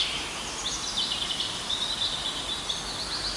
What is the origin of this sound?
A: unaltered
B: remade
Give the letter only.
A